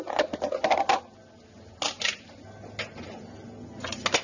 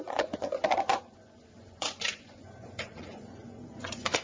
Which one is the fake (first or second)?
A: second